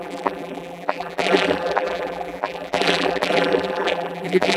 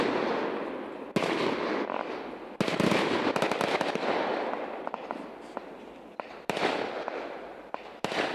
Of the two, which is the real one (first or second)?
second